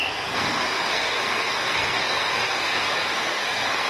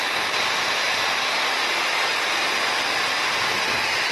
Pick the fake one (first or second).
first